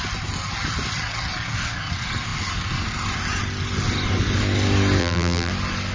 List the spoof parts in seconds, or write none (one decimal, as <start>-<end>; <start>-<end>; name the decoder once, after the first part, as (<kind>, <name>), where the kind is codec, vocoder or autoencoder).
5.0-5.5 (vocoder, BigVGAN v2)